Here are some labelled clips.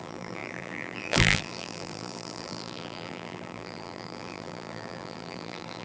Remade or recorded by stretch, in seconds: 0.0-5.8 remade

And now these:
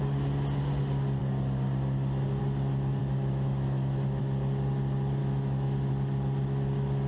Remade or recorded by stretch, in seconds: 0.0-3.0 recorded; 3.0-4.2 remade; 4.2-5.2 recorded; 5.2-5.9 remade; 5.9-7.1 recorded

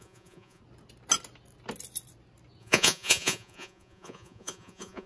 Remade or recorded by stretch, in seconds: 0.0-0.6 remade; 0.6-2.6 recorded; 2.6-5.1 remade

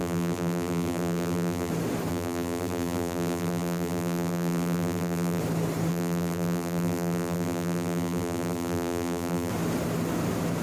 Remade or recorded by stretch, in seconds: 0.0-1.7 remade; 1.7-2.1 recorded; 2.1-5.4 remade; 5.4-5.9 recorded; 5.9-9.5 remade; 9.5-10.6 recorded

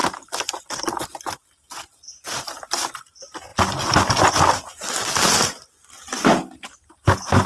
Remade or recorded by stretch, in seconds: 0.0-7.5 recorded

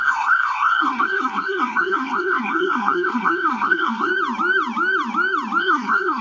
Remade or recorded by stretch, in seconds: 0.0-4.1 remade; 4.1-5.6 recorded; 5.6-6.2 remade